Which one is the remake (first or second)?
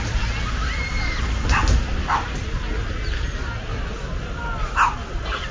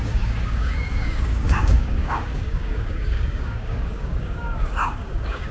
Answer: second